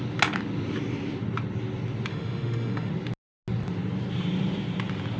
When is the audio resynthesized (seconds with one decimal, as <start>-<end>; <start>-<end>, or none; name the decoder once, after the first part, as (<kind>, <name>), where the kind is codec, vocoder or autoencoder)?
2.1-2.9 (autoencoder, DAC-VAE)